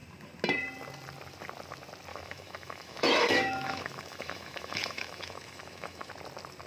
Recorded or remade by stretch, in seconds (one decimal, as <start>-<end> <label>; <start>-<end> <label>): 0.0-2.1 recorded; 2.1-6.1 remade; 6.1-6.7 recorded